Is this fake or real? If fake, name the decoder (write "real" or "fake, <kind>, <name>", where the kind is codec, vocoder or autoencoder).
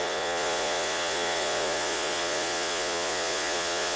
fake, vocoder, Vocos